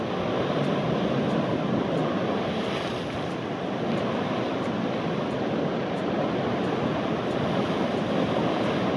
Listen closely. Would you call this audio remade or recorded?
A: recorded